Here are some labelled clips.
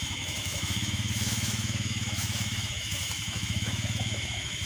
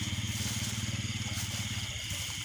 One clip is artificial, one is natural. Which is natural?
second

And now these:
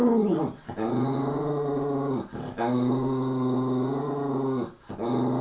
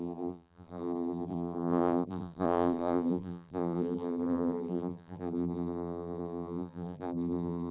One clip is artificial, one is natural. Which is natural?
first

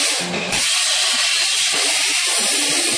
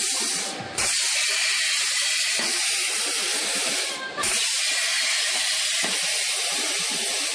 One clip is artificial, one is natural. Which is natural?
second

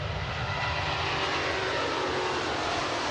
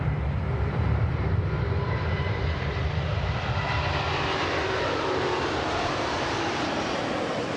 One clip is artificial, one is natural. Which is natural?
first